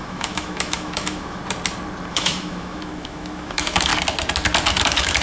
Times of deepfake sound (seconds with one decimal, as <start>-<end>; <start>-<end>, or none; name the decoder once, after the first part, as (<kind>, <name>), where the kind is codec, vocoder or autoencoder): 0.0-1.4 (autoencoder, DAC-VAE); 2.1-3.9; 4.7-5.2